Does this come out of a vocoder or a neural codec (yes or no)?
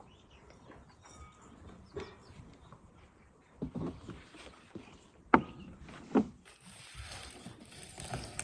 no